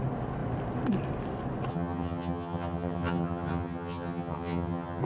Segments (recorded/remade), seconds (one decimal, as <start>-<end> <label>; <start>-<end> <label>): 0.0-1.7 recorded; 1.7-5.0 remade

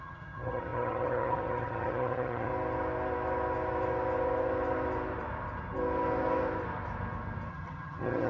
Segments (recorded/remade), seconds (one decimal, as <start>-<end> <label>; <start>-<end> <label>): 0.0-2.5 remade; 2.5-7.5 recorded; 7.5-8.3 remade

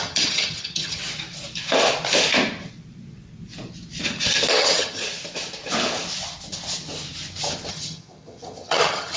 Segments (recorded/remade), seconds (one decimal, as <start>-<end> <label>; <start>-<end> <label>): 0.0-1.0 remade; 1.0-4.6 recorded; 4.6-5.0 remade; 5.0-7.7 recorded; 7.7-9.2 remade

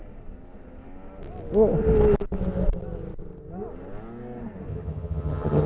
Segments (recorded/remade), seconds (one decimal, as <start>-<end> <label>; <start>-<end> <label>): 0.0-4.7 recorded; 4.7-5.7 remade

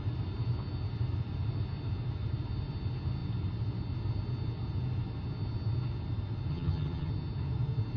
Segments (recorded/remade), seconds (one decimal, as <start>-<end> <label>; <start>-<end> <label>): 0.0-6.5 recorded; 6.5-7.1 remade; 7.1-8.0 recorded